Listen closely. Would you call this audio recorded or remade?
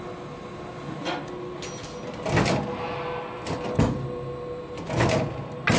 recorded